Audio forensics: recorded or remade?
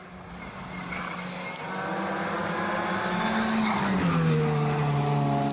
recorded